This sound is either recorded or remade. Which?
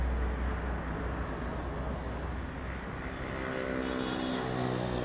recorded